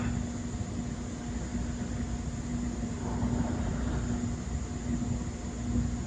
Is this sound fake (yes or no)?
no